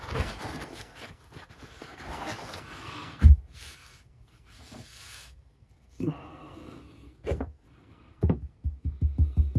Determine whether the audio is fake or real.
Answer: fake